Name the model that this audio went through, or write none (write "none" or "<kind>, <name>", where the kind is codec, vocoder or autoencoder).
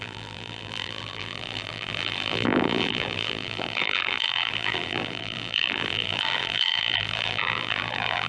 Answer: vocoder, BigVGAN v2